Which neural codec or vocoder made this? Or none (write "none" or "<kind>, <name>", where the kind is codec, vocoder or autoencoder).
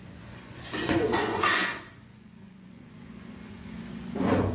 vocoder, Vocos